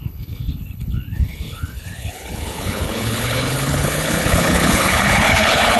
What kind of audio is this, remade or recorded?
remade